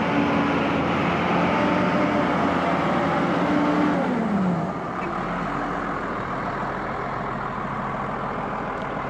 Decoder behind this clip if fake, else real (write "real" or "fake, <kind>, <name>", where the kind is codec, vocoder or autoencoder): real